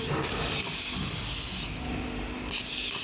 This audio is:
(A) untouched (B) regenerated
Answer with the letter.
A